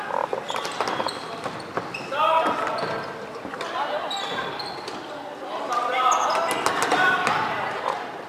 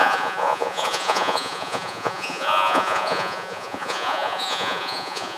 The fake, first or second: second